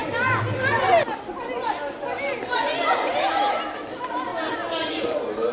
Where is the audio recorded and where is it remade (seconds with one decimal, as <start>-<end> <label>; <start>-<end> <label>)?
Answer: 0.0-5.5 recorded